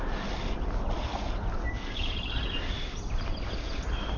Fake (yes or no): no